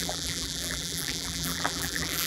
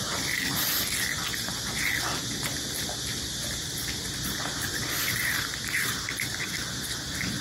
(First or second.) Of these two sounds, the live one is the second